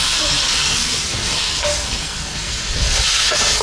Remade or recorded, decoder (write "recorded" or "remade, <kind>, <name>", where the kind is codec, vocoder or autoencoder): remade, codec, SNAC